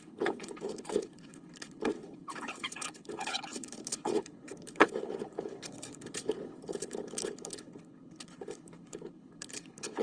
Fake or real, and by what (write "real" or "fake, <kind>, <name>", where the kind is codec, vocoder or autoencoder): fake, codec, HILCodec